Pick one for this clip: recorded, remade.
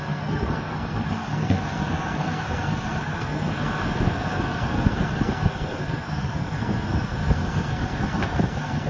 remade